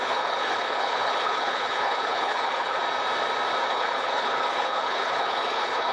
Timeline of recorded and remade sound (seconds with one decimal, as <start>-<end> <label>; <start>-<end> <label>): 0.0-2.8 remade; 2.8-3.7 recorded; 3.7-5.9 remade